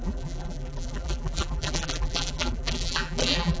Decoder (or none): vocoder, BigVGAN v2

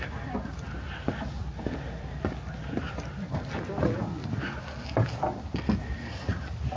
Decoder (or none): none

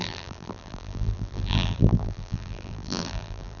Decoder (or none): vocoder, BigVGAN v2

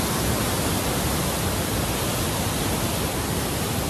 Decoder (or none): none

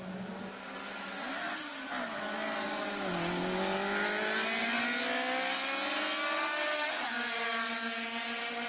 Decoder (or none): none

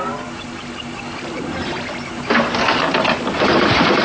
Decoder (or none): none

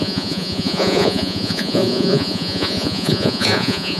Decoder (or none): vocoder, Vocos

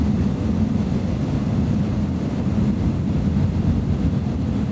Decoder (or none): none